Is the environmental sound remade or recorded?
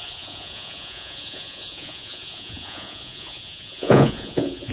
remade